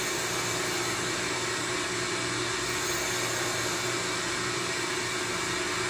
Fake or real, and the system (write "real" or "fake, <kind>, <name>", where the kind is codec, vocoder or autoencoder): real